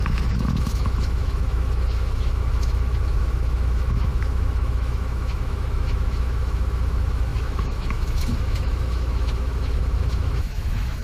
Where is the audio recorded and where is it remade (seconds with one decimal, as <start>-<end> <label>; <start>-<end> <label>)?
0.0-11.0 remade